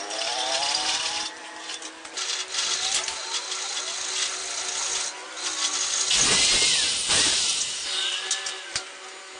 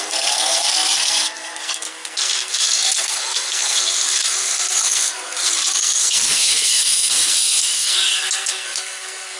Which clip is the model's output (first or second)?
second